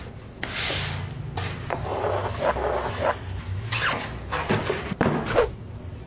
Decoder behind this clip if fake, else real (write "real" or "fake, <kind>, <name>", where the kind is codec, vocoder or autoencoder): real